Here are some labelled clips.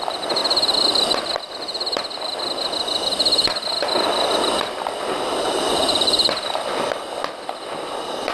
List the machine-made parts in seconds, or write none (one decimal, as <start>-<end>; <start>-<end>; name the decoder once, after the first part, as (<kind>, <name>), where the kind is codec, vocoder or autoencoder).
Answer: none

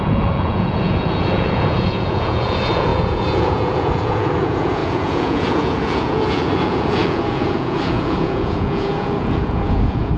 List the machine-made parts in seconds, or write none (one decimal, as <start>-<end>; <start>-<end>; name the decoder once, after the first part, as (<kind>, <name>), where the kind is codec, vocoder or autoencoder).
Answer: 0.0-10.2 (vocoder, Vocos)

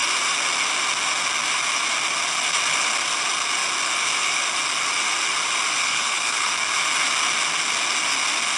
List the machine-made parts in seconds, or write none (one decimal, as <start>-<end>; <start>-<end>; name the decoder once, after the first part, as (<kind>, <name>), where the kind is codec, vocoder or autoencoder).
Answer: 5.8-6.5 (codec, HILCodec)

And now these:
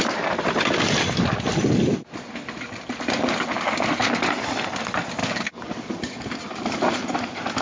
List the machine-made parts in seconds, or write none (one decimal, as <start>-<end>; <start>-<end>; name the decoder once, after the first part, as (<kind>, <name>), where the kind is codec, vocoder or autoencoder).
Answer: 5.2-5.9 (codec, DAC)

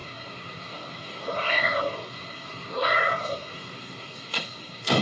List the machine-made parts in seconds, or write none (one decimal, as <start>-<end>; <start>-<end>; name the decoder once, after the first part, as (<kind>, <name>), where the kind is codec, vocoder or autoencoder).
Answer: 0.0-5.0 (codec, SNAC)

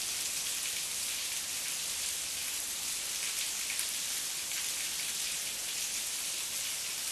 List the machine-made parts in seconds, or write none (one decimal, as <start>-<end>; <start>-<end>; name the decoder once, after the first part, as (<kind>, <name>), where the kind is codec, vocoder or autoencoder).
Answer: none

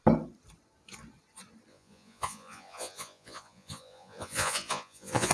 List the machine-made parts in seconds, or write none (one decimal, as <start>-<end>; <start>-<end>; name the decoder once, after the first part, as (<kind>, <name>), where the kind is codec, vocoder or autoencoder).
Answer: 1.7-5.3 (vocoder, Vocos)